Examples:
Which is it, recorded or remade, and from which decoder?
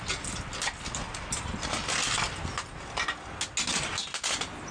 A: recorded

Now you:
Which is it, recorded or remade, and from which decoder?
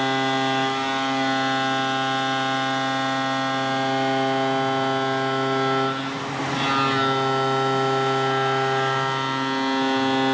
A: recorded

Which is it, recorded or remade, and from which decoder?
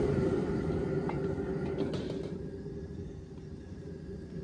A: recorded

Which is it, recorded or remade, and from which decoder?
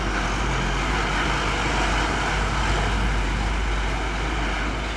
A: recorded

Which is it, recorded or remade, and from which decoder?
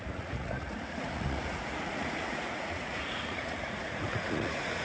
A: remade, vocoder, Vocos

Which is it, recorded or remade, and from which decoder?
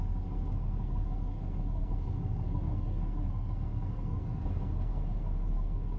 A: remade, codec, SNAC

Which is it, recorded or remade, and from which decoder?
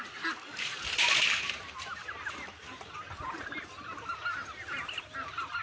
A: recorded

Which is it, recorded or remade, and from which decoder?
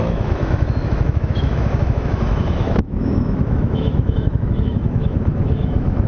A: remade, autoencoder, DAC-VAE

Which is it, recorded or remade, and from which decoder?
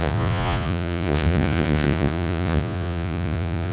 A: remade, vocoder, Vocos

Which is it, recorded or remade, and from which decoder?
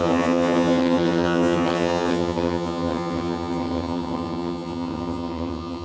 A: remade, vocoder, HiFi-GAN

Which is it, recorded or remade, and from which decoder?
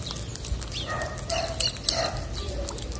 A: recorded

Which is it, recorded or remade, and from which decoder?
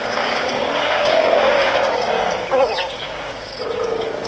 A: remade, codec, DAC